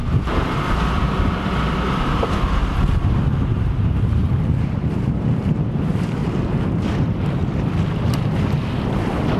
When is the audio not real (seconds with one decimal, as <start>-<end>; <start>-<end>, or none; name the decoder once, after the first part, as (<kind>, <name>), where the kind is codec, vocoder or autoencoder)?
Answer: 2.5-6.2 (vocoder, BigVGAN v2); 6.8-7.4